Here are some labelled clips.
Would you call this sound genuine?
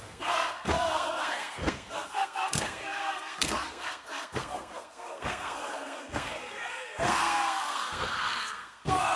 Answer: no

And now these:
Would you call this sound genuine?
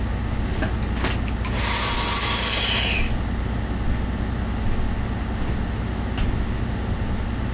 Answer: yes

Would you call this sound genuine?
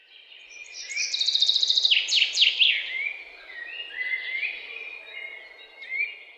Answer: yes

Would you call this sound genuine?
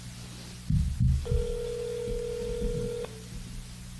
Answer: yes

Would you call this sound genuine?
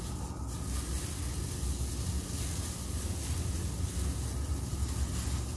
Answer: yes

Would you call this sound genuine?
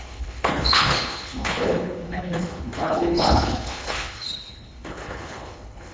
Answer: no